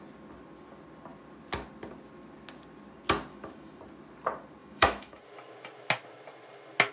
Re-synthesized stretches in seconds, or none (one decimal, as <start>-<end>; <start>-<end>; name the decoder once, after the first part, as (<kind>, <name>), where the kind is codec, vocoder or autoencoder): 3.3-3.8 (autoencoder, DAC-VAE); 4.6-5.2